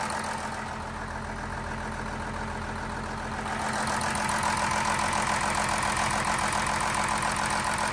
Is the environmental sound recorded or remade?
recorded